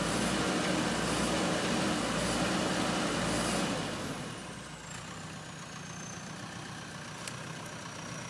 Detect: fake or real real